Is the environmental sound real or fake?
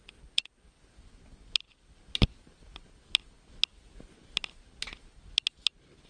real